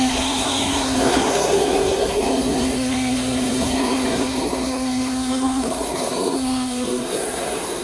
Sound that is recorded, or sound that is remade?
remade